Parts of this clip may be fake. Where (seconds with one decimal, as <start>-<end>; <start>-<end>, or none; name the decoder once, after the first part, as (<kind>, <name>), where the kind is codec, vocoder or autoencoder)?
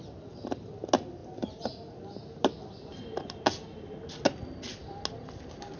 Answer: none